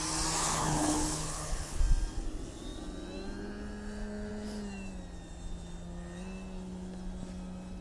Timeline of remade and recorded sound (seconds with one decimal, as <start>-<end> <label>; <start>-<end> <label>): 0.0-0.4 recorded; 0.4-1.8 remade; 1.8-7.8 recorded